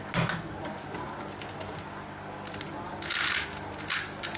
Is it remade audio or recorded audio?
recorded